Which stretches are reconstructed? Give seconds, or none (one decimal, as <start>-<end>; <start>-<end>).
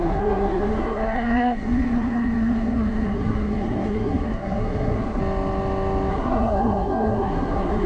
0.0-5.2; 6.1-7.9